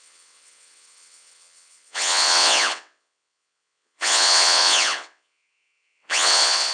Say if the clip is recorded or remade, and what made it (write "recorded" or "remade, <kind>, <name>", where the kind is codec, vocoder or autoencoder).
remade, vocoder, WaveNeXt